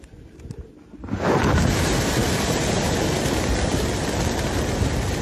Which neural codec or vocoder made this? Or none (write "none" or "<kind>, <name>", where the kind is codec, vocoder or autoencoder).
none